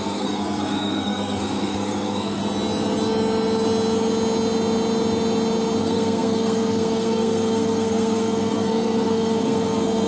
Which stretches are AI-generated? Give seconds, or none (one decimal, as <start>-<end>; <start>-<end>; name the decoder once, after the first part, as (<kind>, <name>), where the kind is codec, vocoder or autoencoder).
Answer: 0.0-2.4 (codec, SNAC); 5.8-10.1